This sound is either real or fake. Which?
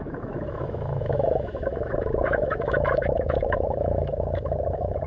fake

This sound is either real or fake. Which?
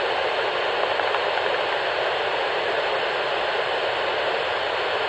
real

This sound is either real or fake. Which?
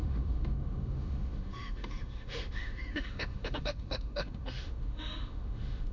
fake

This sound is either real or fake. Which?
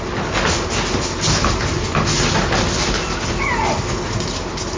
real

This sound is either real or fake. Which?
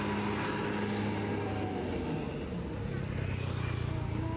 real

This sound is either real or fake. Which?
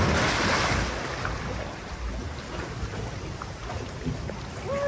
real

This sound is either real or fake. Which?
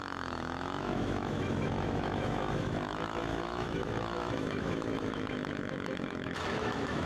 fake